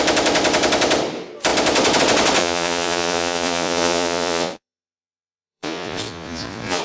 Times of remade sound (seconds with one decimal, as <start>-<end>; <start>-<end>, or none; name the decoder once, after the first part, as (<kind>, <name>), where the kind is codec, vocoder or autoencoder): 2.4-6.8 (vocoder, Vocos)